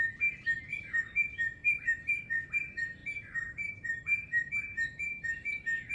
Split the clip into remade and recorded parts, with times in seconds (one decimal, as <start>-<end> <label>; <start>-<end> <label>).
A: 0.0-1.6 recorded; 1.6-2.2 remade; 2.2-3.0 recorded; 3.0-4.5 remade; 4.5-5.9 recorded